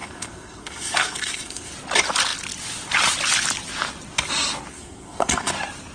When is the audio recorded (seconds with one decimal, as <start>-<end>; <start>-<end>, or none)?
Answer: 1.7-4.7; 5.5-5.9